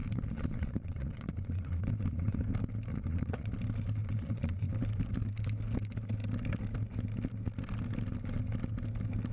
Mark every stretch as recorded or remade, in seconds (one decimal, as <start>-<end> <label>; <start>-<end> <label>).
0.0-2.4 remade; 2.4-2.9 recorded; 2.9-3.5 remade; 3.5-4.0 recorded; 4.0-4.7 remade; 4.7-9.3 recorded